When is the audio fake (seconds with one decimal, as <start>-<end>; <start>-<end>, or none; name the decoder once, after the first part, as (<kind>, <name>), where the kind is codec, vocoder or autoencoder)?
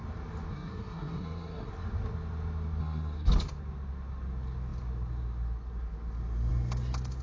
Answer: 0.5-1.7 (codec, SNAC); 2.8-3.3